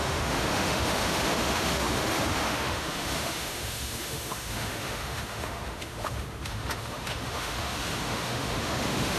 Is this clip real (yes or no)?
no